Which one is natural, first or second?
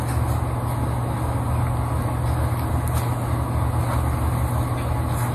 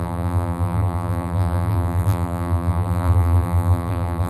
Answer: first